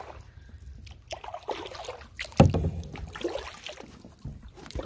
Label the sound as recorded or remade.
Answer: recorded